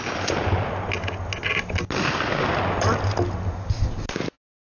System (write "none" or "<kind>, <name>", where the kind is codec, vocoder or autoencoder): none